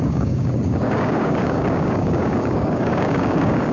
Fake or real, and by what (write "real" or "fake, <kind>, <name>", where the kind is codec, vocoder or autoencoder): fake, codec, DAC